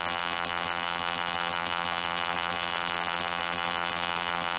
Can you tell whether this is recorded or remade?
remade